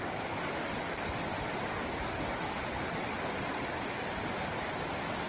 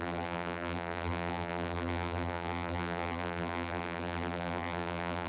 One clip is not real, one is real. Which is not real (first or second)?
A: second